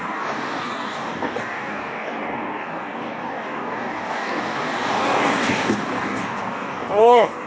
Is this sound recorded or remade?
remade